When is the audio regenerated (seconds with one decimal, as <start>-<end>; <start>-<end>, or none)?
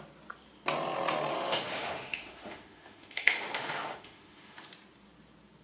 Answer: 1.3-4.7